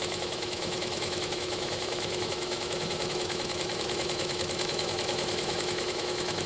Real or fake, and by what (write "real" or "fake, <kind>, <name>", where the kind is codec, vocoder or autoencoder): fake, autoencoder, DAC-VAE